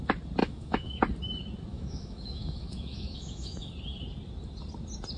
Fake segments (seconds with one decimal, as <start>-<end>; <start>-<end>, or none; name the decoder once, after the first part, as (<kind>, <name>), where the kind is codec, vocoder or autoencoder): 0.4-1.0 (autoencoder, DAC-VAE); 1.7-3.7